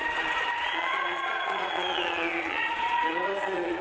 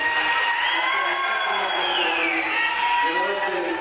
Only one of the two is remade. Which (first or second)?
first